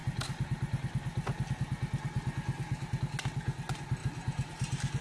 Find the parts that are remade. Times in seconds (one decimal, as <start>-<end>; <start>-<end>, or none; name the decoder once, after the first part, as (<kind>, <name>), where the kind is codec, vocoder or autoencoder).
4.0-5.0 (vocoder, BigVGAN v2)